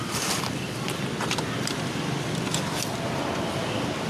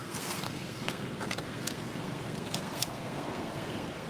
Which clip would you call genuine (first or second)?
first